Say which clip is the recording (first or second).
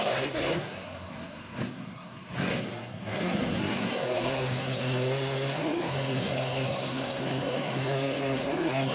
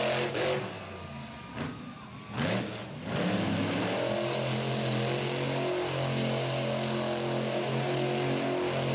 second